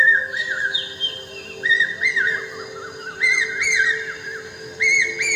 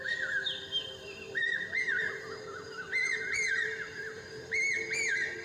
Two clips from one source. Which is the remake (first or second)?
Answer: second